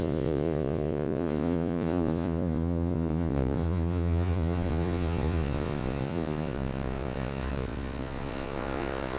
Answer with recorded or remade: remade